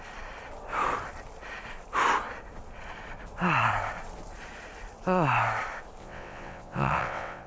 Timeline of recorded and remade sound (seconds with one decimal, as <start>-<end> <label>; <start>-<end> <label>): 0.0-6.0 recorded; 6.0-7.5 remade